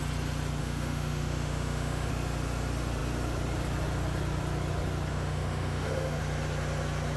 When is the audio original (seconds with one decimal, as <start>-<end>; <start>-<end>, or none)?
0.0-0.6; 2.1-5.1; 6.2-7.2